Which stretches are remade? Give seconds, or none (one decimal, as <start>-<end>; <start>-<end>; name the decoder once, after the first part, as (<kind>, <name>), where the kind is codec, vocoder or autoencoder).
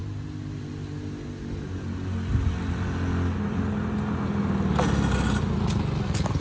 none